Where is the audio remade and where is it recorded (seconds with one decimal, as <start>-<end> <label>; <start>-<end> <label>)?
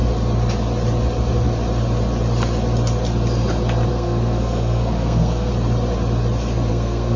0.0-3.9 recorded; 3.9-5.5 remade; 5.5-6.7 recorded; 6.7-7.2 remade